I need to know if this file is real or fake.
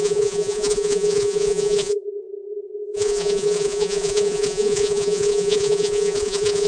fake